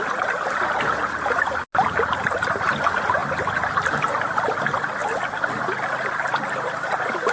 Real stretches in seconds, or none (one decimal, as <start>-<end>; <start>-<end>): 0.0-7.3